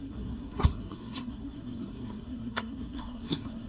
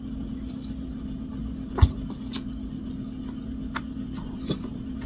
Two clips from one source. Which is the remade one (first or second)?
first